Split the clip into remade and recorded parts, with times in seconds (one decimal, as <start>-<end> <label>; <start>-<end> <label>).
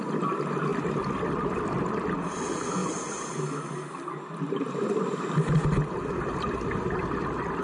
0.0-0.7 recorded; 0.7-2.4 remade; 2.4-7.6 recorded